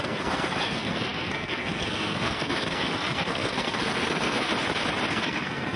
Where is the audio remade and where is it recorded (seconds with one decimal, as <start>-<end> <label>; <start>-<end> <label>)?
0.0-4.5 remade; 4.5-5.1 recorded; 5.1-5.8 remade